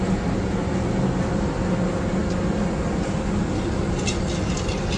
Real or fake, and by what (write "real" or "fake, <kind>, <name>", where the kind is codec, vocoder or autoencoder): real